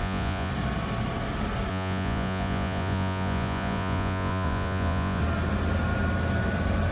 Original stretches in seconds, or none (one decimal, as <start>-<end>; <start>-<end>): 0.5-1.7; 5.2-6.9